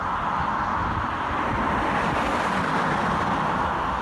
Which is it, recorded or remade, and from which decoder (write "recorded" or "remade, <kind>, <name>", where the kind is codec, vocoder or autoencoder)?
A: recorded